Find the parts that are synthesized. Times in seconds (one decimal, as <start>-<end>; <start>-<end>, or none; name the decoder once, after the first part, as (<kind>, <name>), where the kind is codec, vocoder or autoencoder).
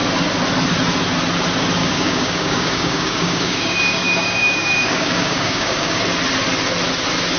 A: 1.8-6.0 (codec, DAC)